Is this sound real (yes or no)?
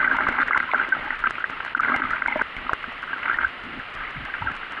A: yes